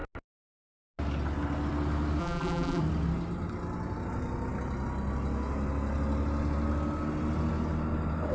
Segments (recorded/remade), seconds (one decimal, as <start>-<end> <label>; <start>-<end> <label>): 0.0-2.2 recorded; 2.2-2.8 remade; 2.8-8.3 recorded